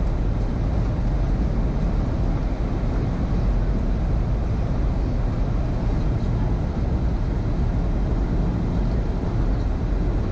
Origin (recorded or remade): recorded